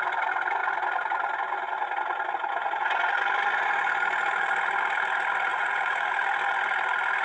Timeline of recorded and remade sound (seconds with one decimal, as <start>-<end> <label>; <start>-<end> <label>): 0.0-5.5 recorded; 5.5-6.1 remade; 6.1-7.2 recorded